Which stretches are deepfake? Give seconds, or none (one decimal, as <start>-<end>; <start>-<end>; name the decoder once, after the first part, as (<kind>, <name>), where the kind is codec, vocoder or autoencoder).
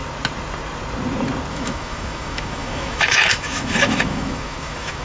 1.5-5.0 (autoencoder, DAC-VAE)